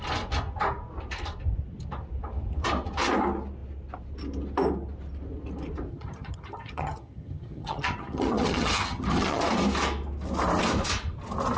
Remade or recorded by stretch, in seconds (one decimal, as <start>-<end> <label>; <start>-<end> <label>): 0.0-5.9 recorded; 5.9-9.4 remade; 9.4-11.6 recorded